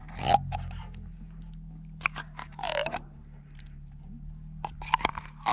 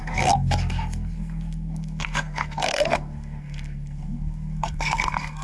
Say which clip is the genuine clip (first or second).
first